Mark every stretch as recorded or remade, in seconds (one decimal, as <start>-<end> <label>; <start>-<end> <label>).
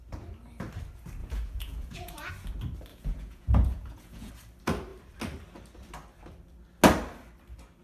0.0-1.2 recorded; 1.2-2.3 remade; 2.3-2.9 recorded; 2.9-4.3 remade; 4.3-7.8 recorded